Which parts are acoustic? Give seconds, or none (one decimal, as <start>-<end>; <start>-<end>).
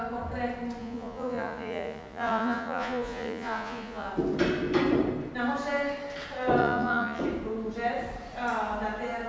0.0-0.8; 4.1-6.6; 7.2-9.3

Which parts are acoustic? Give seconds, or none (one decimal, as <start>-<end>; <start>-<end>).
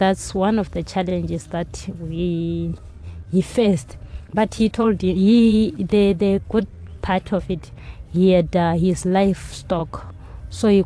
0.0-2.7; 7.4-10.9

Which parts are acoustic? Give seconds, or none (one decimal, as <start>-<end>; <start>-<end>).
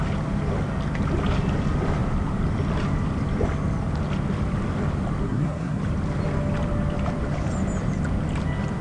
0.0-5.2; 5.8-8.8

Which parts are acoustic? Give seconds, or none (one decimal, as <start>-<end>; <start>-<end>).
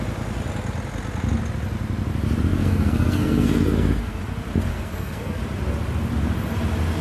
0.0-2.5; 4.2-4.7; 5.4-7.0